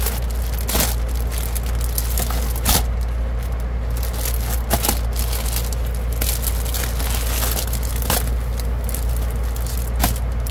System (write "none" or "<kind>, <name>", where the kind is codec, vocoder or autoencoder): none